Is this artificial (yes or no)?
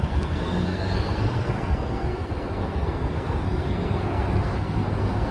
yes